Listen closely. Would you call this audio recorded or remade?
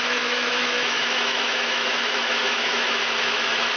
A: remade